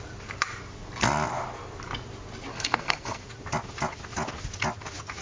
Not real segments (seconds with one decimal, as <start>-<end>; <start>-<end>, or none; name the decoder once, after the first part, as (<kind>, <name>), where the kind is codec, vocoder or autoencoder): 2.5-3.2 (codec, SNAC)